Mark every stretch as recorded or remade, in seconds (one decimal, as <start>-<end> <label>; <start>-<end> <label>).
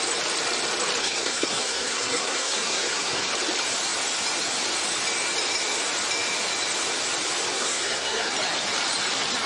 0.0-1.0 recorded; 1.0-3.3 remade; 3.3-7.5 recorded; 7.5-8.3 remade; 8.3-9.5 recorded